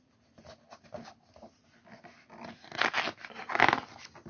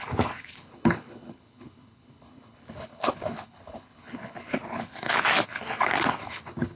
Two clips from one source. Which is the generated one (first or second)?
second